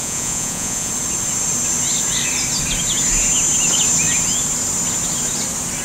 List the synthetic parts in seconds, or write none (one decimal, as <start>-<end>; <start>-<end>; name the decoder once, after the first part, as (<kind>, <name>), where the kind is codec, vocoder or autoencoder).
0.0-0.9 (vocoder, Vocos)